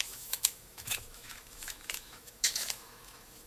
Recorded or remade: remade